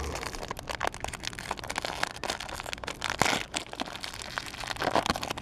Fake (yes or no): no